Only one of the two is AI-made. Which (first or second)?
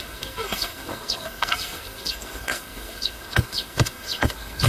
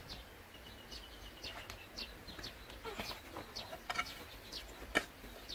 first